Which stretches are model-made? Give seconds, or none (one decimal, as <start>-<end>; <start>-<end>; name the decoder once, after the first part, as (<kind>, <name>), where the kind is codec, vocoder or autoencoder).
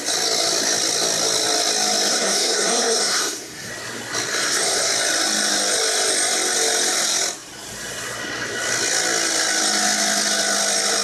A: 2.1-3.7 (codec, SNAC); 4.3-4.9